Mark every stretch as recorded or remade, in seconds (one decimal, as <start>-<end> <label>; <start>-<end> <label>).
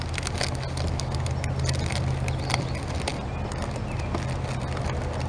0.0-5.3 recorded